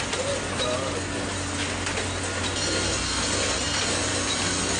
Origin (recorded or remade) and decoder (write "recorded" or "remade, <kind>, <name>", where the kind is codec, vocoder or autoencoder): recorded